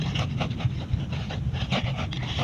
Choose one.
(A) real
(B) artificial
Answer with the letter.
A